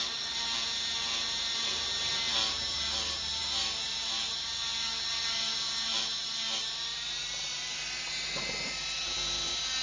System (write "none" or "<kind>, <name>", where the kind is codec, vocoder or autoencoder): vocoder, BigVGAN v2